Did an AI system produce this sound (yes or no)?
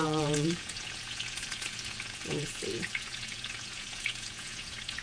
yes